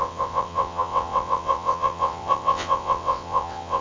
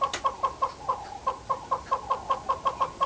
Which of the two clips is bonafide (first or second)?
second